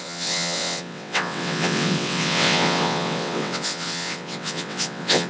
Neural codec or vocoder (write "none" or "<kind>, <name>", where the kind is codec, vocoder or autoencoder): vocoder, WaveNeXt